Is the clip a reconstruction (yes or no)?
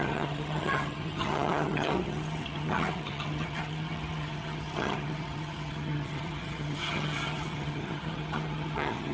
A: yes